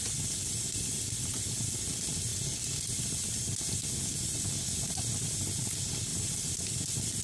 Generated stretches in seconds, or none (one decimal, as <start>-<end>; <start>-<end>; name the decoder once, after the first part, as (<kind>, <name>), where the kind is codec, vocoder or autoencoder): 2.3-3.9 (vocoder, BigVGAN v2); 6.1-6.6